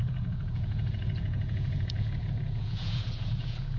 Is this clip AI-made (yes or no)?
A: yes